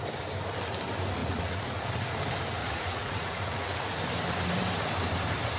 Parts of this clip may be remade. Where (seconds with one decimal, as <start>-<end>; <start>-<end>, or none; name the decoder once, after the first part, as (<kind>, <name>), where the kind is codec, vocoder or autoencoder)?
1.2-1.8 (vocoder, Vocos); 2.6-4.0